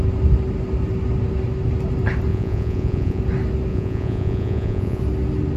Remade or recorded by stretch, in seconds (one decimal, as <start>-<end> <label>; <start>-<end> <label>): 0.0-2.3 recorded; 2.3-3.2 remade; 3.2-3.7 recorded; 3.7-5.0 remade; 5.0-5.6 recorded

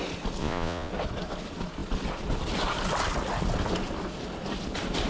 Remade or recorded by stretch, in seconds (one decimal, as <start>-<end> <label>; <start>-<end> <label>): 0.0-0.4 recorded; 0.4-0.9 remade; 0.9-5.1 recorded

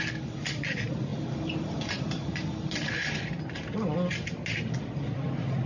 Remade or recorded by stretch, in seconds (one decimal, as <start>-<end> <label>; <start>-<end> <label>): 0.0-5.7 recorded

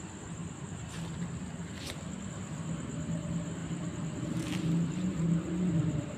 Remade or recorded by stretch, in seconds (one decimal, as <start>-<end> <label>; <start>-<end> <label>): 0.0-0.4 recorded; 0.4-1.8 remade; 1.8-3.6 recorded; 3.6-4.2 remade; 4.2-6.2 recorded

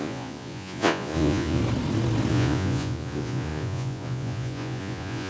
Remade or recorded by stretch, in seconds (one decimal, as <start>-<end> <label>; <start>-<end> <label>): 0.0-1.6 remade; 1.6-2.3 recorded; 2.3-5.3 remade

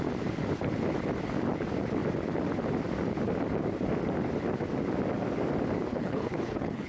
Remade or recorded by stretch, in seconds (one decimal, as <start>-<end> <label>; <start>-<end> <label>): 0.0-5.9 recorded; 5.9-6.9 remade